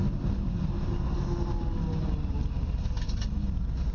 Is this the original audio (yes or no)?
yes